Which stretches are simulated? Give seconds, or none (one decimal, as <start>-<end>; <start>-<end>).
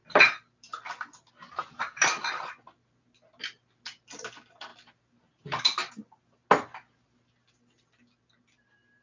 none